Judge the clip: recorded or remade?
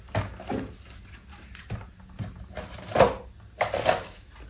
recorded